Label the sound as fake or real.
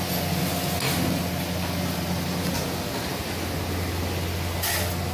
real